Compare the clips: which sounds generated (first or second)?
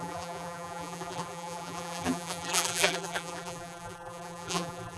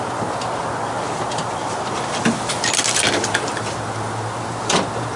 first